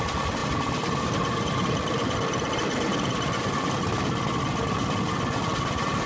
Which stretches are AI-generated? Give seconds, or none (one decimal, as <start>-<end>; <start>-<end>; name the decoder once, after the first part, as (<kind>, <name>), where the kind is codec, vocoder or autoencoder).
none